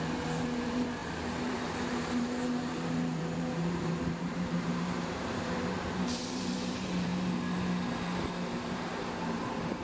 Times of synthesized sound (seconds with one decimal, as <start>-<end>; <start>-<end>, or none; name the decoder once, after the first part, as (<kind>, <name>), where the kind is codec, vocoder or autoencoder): 0.0-7.1 (vocoder, BigVGAN v2); 8.6-9.8